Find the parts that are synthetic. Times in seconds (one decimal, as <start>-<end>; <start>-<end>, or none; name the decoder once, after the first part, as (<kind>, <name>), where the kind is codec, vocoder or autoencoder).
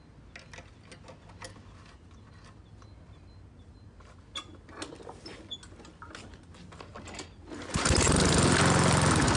none